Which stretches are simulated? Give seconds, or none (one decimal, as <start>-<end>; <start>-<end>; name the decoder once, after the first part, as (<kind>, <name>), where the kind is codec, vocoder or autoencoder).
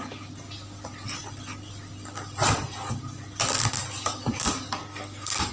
4.8-5.5 (codec, SNAC)